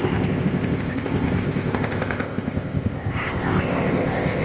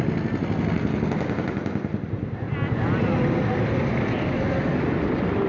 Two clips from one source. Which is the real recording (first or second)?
second